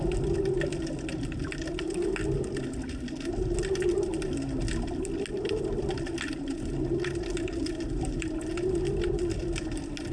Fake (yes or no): no